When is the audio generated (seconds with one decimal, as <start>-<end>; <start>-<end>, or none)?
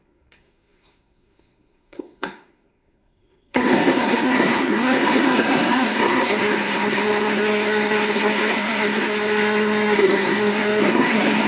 0.0-11.5